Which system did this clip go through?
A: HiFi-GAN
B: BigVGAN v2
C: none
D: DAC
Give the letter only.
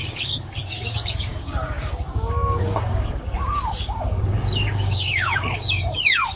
D